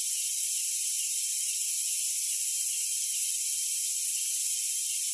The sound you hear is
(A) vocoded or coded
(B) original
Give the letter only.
A